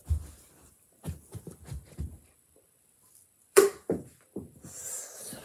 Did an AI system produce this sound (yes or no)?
yes